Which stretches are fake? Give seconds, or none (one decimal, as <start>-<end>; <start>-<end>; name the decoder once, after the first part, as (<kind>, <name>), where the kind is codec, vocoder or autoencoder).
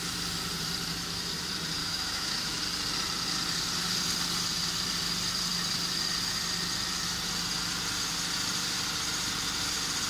1.8-2.6 (autoencoder, DAC-VAE)